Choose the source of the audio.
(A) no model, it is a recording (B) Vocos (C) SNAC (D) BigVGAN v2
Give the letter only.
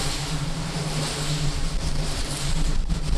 D